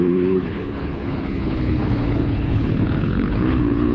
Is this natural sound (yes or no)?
no